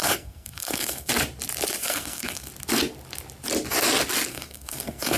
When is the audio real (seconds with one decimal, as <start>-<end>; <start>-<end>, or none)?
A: 1.1-1.8; 2.5-4.3

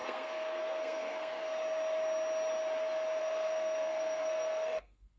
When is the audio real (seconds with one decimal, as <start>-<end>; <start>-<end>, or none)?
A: 1.4-3.2